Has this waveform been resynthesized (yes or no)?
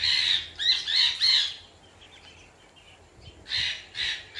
no